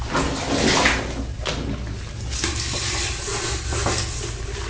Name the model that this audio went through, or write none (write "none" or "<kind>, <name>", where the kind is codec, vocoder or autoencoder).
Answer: none